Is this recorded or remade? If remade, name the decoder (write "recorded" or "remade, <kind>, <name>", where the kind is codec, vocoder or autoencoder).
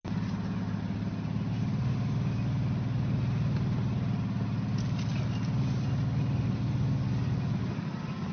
recorded